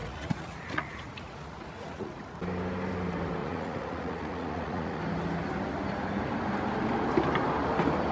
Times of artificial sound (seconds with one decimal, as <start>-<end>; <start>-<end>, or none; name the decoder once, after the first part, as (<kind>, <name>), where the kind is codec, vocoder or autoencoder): 0.0-2.3 (vocoder, Vocos); 3.4-5.0

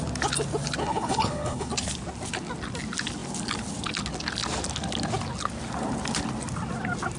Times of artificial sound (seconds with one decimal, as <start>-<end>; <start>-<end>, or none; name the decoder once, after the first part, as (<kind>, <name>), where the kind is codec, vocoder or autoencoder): 0.8-1.7 (codec, HILCodec)

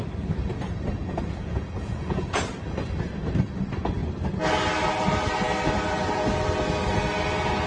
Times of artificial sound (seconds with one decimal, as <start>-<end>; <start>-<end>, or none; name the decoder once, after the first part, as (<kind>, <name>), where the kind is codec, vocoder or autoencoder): 1.0-2.5 (vocoder, Vocos)

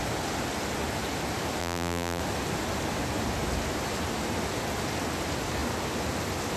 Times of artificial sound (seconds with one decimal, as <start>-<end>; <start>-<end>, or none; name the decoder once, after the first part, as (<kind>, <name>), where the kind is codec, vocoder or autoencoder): 1.6-2.2 (vocoder, BigVGAN v2)

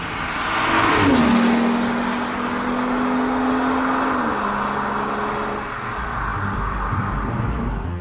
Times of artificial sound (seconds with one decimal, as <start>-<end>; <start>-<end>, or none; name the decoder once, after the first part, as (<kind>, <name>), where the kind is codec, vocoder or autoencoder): none